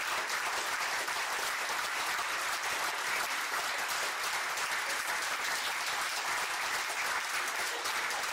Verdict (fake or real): real